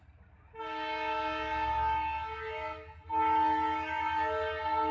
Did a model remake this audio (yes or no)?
no